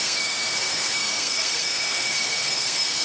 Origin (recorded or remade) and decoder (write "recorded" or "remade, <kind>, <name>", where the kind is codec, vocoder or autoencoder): remade, codec, SNAC